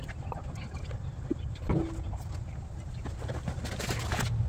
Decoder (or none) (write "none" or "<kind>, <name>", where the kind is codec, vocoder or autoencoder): none